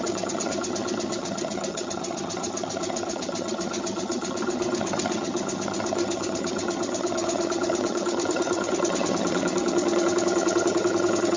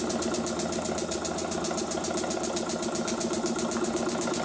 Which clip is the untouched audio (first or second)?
second